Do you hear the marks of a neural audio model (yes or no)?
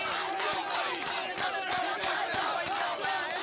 no